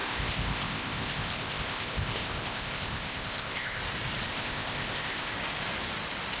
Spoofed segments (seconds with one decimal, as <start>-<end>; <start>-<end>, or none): 0.0-3.8; 4.3-5.3